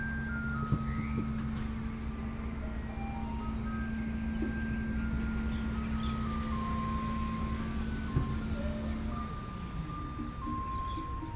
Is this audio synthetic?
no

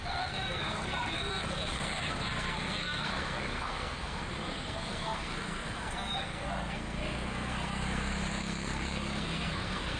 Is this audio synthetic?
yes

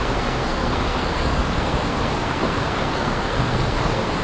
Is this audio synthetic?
yes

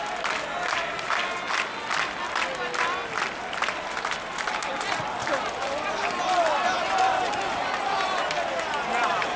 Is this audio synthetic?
no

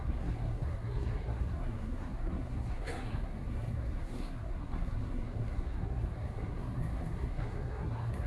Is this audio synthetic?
yes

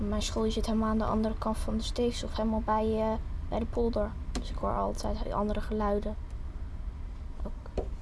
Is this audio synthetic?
no